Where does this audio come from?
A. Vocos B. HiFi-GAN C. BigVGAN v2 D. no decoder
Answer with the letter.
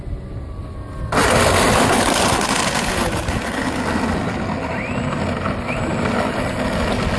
D